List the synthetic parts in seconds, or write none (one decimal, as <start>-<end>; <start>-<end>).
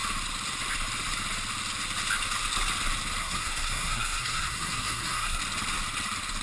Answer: 3.2-5.4